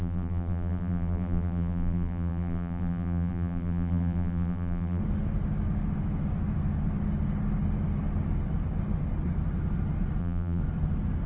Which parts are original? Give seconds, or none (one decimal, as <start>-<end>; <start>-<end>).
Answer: 5.0-10.2; 10.6-11.3

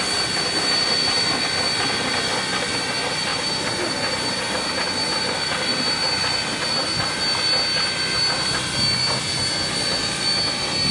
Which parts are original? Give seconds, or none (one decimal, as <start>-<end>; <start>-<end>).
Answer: 0.0-10.9

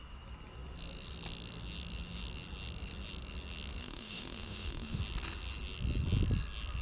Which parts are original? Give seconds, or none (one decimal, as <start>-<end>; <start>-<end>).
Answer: 0.0-3.8; 5.0-6.8

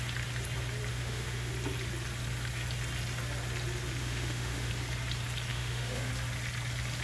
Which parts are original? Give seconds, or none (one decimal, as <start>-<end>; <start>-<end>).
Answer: 0.0-0.9; 1.5-4.0; 4.7-5.5; 6.1-7.0

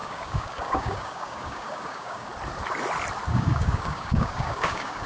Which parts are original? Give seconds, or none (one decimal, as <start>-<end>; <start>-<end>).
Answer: 2.3-3.3

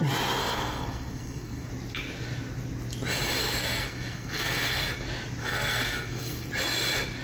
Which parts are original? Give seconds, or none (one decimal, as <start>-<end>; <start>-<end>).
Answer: 0.0-0.4; 1.7-3.4; 4.8-5.4; 6.5-7.2

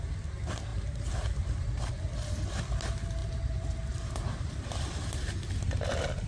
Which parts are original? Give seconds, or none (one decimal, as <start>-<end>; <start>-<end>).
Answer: 0.0-0.7; 1.9-6.3